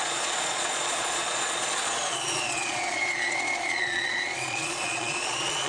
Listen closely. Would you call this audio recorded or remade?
remade